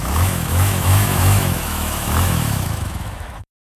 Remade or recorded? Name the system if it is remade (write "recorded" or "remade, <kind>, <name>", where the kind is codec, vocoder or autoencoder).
remade, autoencoder, DAC-VAE